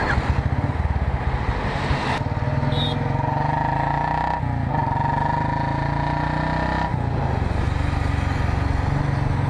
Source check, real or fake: real